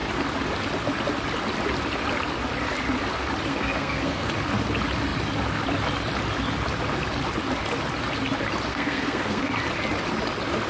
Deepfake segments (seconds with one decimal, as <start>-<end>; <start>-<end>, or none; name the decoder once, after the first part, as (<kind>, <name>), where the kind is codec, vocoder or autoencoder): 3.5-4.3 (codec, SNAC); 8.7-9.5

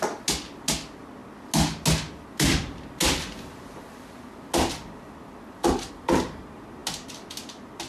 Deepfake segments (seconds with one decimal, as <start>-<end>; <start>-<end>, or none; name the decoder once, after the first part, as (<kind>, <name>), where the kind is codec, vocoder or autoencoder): none

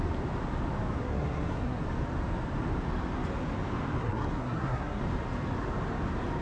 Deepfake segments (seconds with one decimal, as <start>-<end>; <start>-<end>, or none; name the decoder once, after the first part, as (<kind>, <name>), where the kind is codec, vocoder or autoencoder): 1.0-1.8 (codec, SNAC); 4.0-5.0

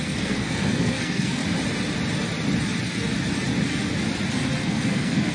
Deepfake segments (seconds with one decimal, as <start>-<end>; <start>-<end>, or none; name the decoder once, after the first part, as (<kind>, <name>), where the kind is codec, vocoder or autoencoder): 0.0-1.4 (codec, SNAC); 4.6-5.3

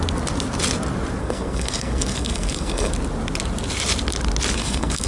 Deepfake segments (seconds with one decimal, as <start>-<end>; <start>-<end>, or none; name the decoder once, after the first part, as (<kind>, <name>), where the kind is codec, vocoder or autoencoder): 1.2-2.9 (codec, SNAC); 4.6-5.1

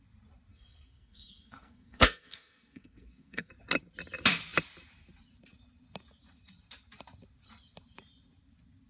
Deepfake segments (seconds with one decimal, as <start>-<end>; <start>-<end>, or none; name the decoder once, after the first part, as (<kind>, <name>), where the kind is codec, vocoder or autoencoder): 0.5-3.5 (codec, SNAC)

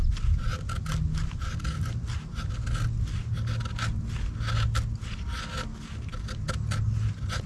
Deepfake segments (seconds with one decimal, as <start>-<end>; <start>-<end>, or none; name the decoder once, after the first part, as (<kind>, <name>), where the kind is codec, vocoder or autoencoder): none